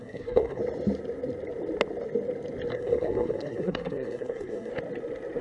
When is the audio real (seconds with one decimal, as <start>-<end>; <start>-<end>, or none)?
0.6-2.7; 4.7-5.4